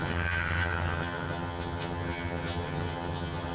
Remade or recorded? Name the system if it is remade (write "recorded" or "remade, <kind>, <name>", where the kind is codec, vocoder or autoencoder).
remade, vocoder, HiFi-GAN